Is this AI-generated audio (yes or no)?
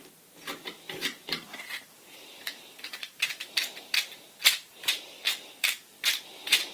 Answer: yes